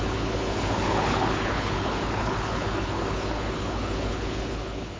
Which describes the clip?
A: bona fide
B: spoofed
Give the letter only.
B